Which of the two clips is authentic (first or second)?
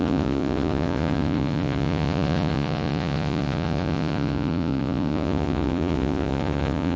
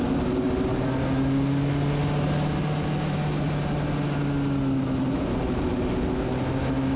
second